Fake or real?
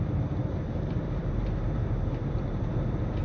fake